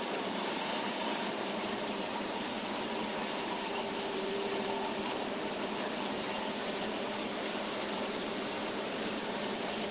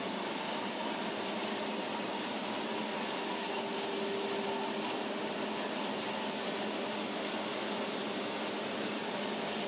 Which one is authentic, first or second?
second